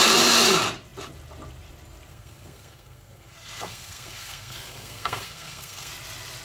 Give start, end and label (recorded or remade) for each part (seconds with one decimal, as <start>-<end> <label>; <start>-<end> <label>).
0.0-2.1 recorded; 2.1-5.9 remade; 5.9-6.4 recorded